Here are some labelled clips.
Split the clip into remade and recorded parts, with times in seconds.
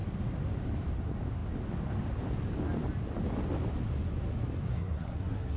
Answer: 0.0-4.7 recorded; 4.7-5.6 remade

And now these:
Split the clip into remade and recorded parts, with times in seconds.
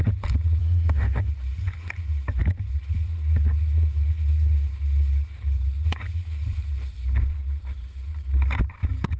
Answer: 0.0-0.6 recorded; 0.6-1.3 remade; 1.3-9.2 recorded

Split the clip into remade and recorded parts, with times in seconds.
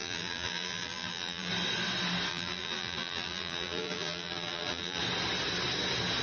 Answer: 0.0-1.5 remade; 1.5-2.3 recorded; 2.3-5.0 remade; 5.0-6.2 recorded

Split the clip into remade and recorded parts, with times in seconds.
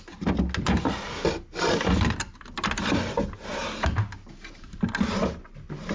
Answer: 0.0-5.9 recorded